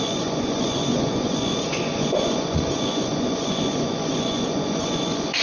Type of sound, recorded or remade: remade